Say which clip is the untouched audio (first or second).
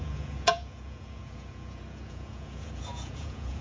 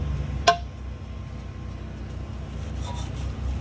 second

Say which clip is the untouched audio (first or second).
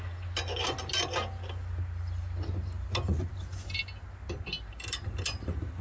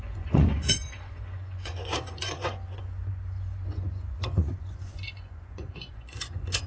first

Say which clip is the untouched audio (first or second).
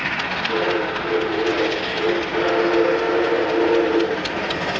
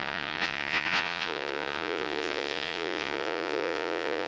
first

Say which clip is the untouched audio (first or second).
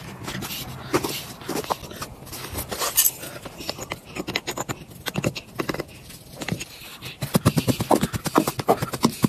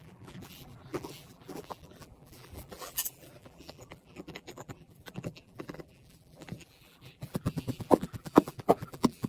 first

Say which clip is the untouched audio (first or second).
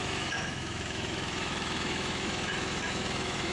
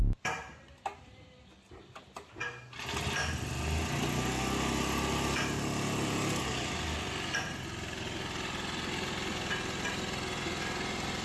second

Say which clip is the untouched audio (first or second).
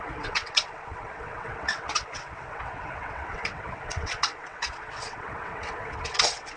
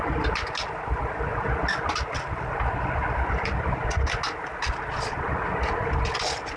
second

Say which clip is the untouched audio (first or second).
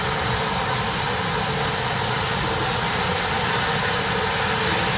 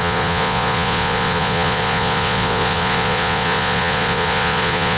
first